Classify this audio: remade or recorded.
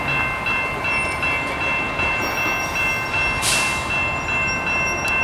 recorded